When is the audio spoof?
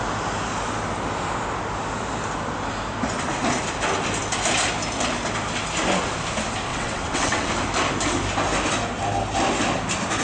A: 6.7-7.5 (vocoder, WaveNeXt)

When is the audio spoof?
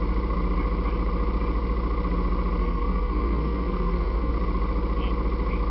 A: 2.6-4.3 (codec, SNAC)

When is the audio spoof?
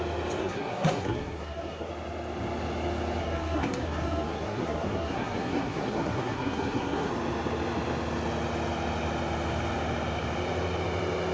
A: 0.4-1.9 (codec, SNAC); 3.2-7.1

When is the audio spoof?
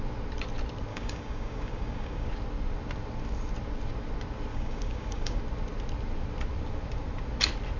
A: 0.9-2.3 (codec, DAC); 4.5-5.4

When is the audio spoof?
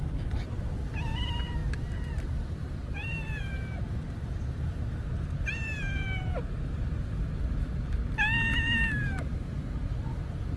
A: none